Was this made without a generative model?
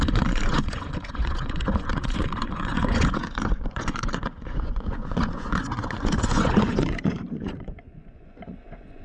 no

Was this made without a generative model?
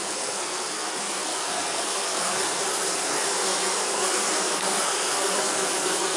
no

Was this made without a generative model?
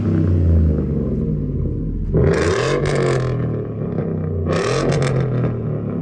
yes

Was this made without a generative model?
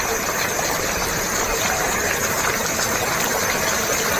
yes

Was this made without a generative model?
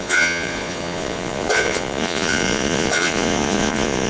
no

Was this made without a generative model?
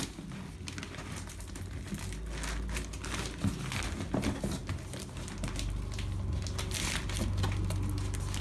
yes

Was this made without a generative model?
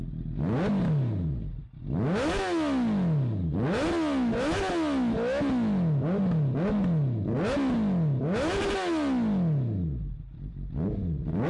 yes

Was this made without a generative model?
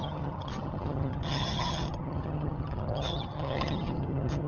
no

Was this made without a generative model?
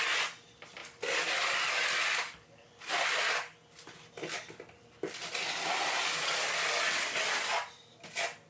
yes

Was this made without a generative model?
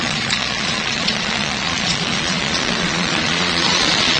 no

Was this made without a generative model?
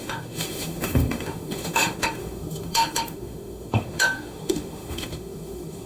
no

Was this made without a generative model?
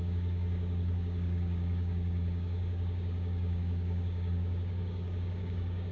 no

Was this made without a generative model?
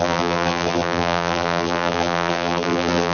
no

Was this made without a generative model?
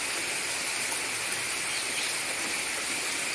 no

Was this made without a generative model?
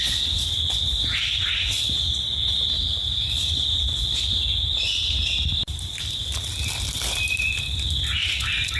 no